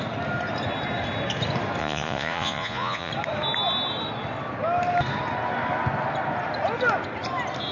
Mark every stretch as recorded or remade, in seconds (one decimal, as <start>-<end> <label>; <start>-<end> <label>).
0.0-1.8 recorded; 1.8-3.1 remade; 3.1-7.7 recorded